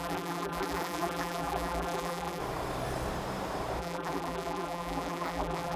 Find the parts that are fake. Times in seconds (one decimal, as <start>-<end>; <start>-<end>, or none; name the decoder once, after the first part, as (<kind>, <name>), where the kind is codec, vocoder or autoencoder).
0.0-2.4 (vocoder, BigVGAN v2); 3.8-5.8